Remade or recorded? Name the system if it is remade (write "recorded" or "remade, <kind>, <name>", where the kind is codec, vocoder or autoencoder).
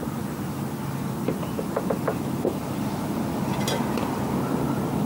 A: recorded